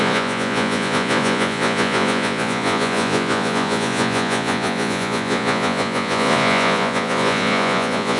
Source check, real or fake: fake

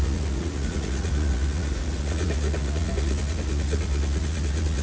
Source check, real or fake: fake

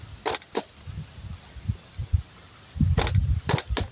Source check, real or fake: real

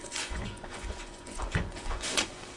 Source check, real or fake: fake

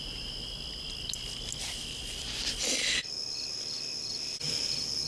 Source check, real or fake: real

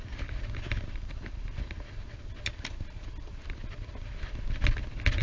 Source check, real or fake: real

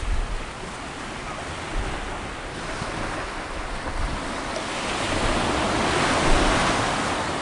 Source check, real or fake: real